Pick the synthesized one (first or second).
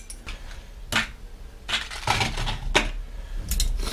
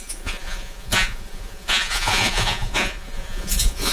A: second